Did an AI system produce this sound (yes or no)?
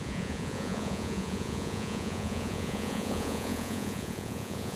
yes